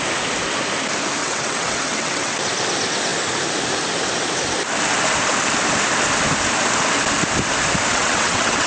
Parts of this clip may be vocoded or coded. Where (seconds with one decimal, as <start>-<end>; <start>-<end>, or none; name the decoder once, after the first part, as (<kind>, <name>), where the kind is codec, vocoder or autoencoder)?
1.2-2.3 (vocoder, WaveNeXt); 7.9-8.7